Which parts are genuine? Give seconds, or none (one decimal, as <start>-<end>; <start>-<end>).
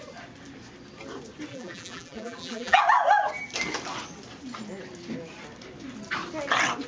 0.0-1.5; 2.8-6.9